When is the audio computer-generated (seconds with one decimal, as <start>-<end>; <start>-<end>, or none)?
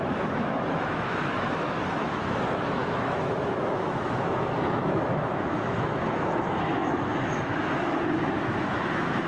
0.0-9.3